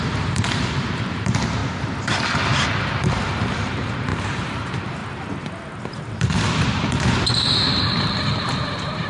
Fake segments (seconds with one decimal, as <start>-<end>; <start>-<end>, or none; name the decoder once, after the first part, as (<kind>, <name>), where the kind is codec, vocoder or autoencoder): 0.0-1.6 (vocoder, BigVGAN v2); 3.1-5.0; 7.1-9.1